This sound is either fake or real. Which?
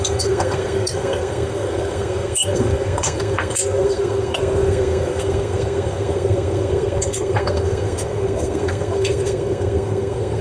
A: fake